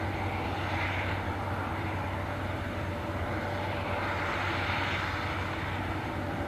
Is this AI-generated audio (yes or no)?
no